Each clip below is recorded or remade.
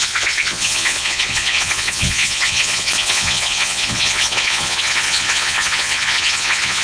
remade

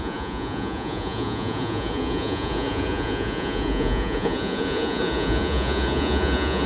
remade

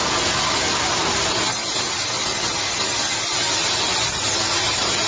recorded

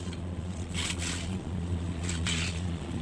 remade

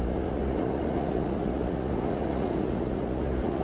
remade